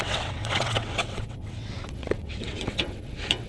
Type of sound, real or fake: fake